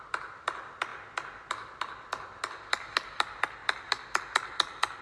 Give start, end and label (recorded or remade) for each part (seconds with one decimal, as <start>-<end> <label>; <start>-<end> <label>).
0.0-5.0 recorded